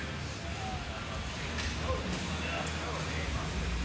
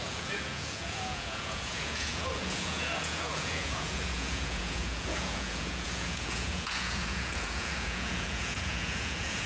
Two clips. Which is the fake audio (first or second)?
second